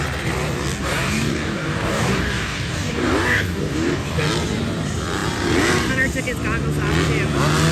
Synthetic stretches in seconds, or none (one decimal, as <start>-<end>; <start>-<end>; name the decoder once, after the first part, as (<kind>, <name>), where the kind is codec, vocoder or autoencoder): 0.8-4.1 (codec, DAC)